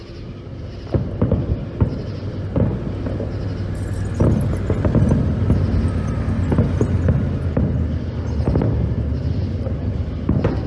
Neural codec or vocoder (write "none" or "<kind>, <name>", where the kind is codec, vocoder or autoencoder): none